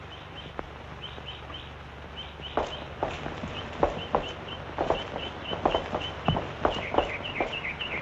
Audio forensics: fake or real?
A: real